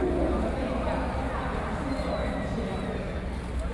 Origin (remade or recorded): recorded